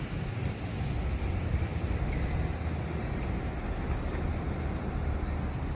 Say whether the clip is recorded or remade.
recorded